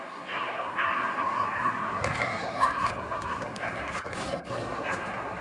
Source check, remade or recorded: remade